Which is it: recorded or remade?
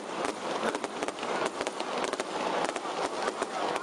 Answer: recorded